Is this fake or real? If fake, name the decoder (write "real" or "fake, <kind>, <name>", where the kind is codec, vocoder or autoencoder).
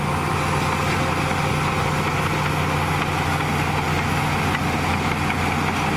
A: real